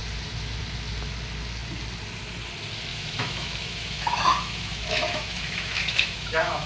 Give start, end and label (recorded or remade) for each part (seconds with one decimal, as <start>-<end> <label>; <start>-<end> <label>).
0.0-2.9 recorded; 2.9-6.7 remade